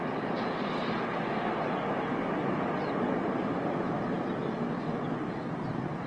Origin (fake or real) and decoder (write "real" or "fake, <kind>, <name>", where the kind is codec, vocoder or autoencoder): real